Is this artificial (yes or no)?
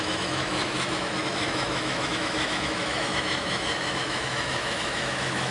yes